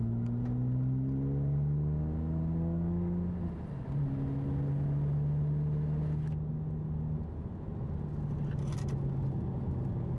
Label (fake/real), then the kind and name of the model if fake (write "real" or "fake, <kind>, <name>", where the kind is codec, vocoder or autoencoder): real